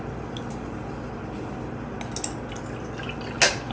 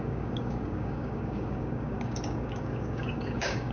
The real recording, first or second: first